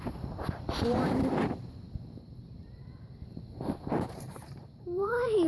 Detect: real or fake fake